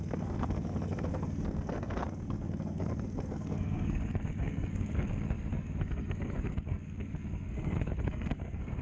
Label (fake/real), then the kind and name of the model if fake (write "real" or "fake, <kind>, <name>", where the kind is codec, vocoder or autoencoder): fake, codec, SNAC